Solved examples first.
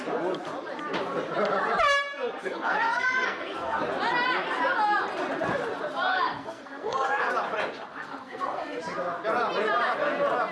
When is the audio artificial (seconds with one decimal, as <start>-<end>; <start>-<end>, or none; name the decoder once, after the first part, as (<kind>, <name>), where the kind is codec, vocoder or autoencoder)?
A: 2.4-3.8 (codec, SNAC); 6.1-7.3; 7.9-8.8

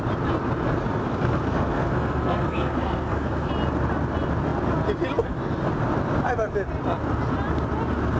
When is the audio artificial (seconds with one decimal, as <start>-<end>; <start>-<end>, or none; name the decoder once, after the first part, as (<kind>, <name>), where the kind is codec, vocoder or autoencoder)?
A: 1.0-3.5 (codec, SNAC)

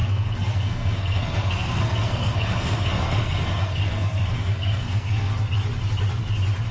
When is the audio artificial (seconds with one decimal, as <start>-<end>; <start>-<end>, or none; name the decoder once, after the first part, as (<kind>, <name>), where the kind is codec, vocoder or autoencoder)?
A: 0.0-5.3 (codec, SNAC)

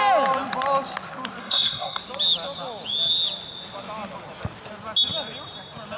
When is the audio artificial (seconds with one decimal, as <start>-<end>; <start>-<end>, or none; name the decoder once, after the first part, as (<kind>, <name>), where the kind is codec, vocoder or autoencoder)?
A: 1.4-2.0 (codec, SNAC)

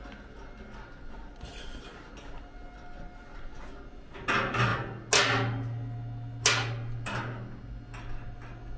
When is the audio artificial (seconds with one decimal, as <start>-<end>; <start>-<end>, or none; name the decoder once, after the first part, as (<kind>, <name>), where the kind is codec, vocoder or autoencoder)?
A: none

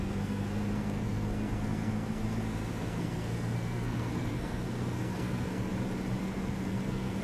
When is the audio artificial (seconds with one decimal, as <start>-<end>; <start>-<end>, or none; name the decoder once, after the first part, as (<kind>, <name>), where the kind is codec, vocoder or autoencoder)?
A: 0.0-5.7 (codec, SNAC); 6.2-7.2

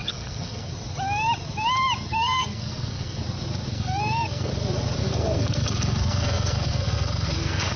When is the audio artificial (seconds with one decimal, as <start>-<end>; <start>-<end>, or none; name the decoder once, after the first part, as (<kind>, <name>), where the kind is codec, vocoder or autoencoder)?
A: 0.0-0.7 (codec, SNAC); 2.1-3.2; 3.7-4.5; 5.0-7.8

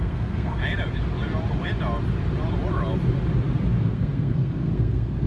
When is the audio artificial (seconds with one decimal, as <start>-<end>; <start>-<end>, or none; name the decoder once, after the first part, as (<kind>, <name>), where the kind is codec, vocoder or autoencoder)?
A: 0.0-0.6 (codec, SNAC); 3.8-5.3